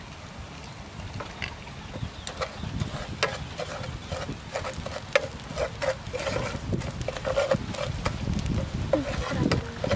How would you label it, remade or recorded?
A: recorded